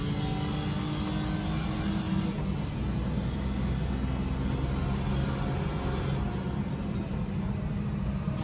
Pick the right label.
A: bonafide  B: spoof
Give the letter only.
A